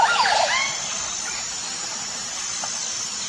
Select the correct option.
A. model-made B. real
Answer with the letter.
B